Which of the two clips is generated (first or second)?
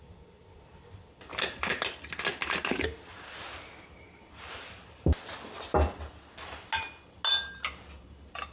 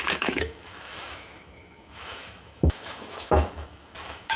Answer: second